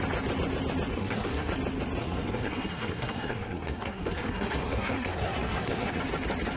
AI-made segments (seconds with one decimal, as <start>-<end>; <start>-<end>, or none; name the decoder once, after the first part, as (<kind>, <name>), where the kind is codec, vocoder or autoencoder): 0.9-1.5 (codec, SNAC); 2.0-6.0